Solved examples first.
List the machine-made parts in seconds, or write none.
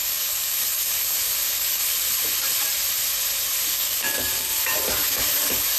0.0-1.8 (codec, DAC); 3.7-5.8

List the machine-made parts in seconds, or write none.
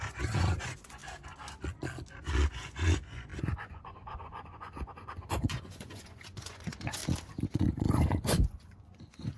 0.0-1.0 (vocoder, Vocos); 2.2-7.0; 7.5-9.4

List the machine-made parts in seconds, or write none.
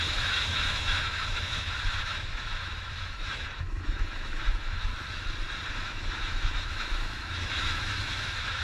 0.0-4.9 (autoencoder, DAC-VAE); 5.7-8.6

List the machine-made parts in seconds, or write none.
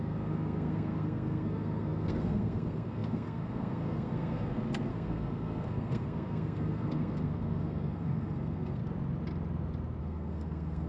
0.0-8.8 (codec, SNAC); 10.0-10.9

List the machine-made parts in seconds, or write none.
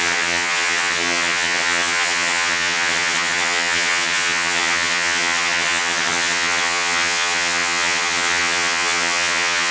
0.0-9.7 (vocoder, HiFi-GAN)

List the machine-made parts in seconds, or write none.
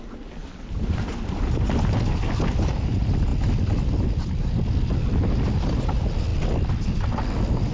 none